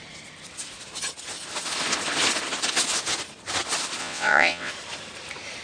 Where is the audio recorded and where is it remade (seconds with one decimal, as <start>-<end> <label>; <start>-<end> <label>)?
0.0-4.0 recorded; 4.0-4.7 remade; 4.7-5.6 recorded